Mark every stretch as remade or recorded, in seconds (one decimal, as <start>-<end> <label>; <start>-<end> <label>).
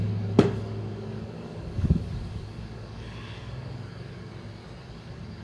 0.0-4.3 remade; 4.3-4.8 recorded; 4.8-5.4 remade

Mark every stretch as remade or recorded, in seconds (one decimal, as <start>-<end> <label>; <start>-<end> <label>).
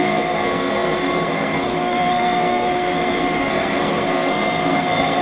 0.0-5.2 remade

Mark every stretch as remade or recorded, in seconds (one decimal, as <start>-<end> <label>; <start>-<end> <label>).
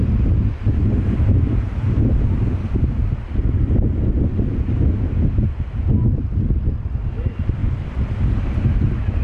0.0-9.2 recorded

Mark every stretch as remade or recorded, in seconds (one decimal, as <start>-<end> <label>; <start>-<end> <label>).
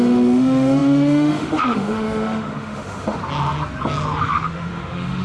0.0-3.2 remade; 3.2-4.3 recorded; 4.3-5.2 remade